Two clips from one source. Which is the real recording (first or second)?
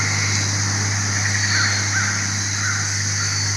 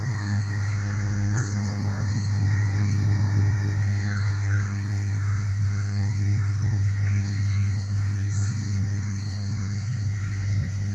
first